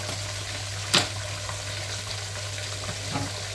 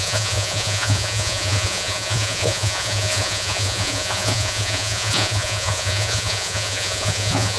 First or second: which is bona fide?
first